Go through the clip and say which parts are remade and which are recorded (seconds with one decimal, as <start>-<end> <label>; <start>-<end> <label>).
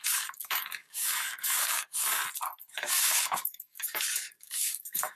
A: 0.0-2.2 remade; 2.2-2.7 recorded; 2.7-5.2 remade